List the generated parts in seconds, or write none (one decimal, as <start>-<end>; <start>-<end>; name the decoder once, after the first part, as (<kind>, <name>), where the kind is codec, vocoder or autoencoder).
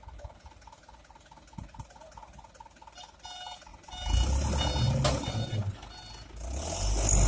none